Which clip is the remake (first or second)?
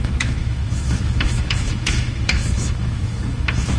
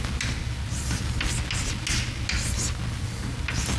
first